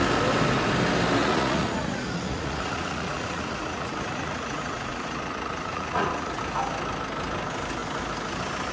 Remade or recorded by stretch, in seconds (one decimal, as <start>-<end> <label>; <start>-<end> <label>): 0.0-1.2 recorded; 1.2-6.4 remade; 6.4-8.7 recorded